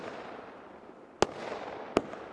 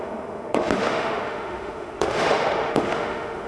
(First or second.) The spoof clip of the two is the second